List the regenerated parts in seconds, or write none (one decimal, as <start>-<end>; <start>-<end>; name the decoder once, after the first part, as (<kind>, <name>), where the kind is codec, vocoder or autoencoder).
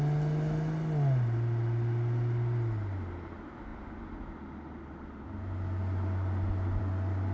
none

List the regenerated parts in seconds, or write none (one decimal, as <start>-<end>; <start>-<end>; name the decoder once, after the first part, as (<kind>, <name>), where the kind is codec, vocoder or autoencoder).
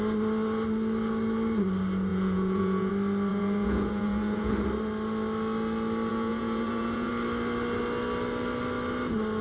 2.1-2.9 (vocoder, Vocos); 3.3-4.5; 6.1-7.1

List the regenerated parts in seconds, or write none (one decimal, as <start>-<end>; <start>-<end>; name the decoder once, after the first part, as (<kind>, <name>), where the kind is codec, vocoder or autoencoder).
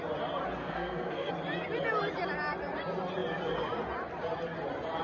0.6-1.3 (codec, SNAC)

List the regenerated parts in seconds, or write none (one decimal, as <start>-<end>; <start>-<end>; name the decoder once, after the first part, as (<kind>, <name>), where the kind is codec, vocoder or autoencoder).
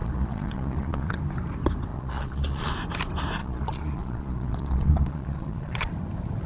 0.0-1.2 (vocoder, Vocos); 1.9-2.7; 3.4-5.9